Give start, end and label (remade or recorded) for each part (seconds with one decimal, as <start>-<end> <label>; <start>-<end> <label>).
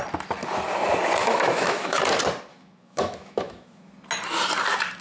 0.0-1.2 recorded; 1.2-2.0 remade; 2.0-2.5 recorded; 2.5-3.9 remade; 3.9-5.0 recorded